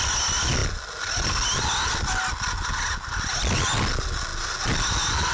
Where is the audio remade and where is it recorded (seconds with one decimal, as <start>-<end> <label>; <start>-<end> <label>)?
0.0-5.3 recorded